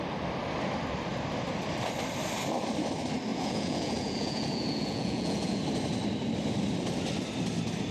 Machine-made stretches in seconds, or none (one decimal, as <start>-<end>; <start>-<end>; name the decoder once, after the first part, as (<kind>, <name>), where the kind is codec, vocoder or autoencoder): 3.3-5.6 (vocoder, Vocos)